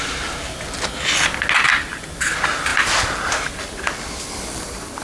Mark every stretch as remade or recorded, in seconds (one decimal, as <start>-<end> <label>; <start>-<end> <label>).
0.0-5.0 recorded